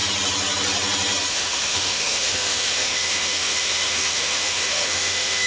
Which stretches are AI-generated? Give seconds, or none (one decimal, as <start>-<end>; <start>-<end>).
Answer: 1.3-5.5